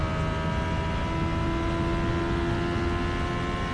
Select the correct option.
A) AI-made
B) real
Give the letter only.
B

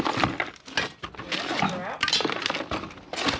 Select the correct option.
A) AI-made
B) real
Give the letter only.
B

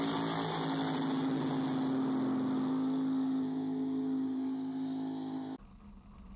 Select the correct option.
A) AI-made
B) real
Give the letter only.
B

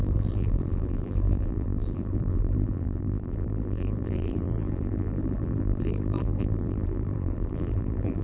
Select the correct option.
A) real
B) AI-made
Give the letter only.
B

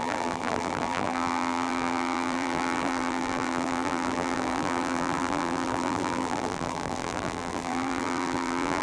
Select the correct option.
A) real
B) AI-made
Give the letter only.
B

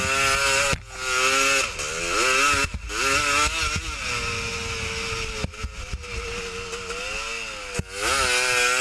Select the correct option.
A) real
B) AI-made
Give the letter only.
A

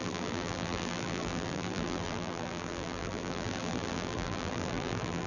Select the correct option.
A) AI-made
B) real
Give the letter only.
A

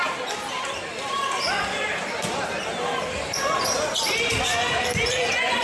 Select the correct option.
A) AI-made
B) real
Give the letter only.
A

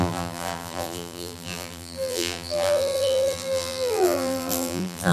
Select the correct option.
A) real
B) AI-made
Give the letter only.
B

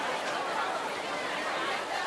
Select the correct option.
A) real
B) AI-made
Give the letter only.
B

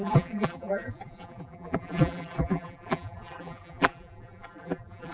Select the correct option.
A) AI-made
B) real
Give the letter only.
A